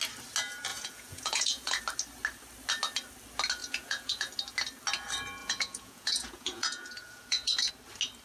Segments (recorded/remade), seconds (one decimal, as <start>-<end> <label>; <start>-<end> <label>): 0.0-0.7 recorded; 0.7-1.8 remade; 1.8-3.6 recorded; 3.6-4.3 remade; 4.3-5.4 recorded; 5.4-7.7 remade; 7.7-8.2 recorded